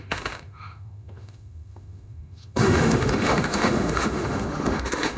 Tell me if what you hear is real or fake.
fake